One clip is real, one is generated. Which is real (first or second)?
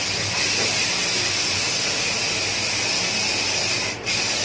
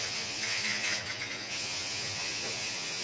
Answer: first